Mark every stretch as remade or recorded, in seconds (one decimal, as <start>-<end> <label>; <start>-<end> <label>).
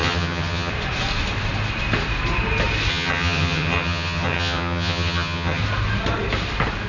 0.0-0.7 remade; 0.7-2.9 recorded; 2.9-5.6 remade; 5.6-6.9 recorded